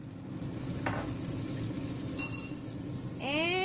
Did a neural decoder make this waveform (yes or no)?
no